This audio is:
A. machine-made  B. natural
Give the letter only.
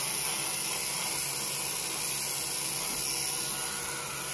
B